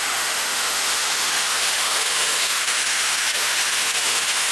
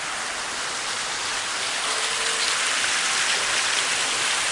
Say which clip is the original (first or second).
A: second